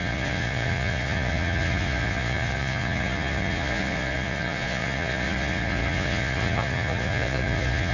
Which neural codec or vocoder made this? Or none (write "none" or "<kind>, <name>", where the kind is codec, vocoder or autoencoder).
vocoder, Vocos